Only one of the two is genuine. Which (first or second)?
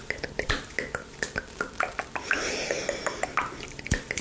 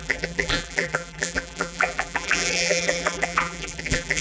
first